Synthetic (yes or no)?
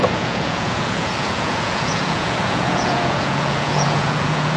yes